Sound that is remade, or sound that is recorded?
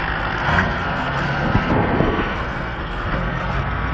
remade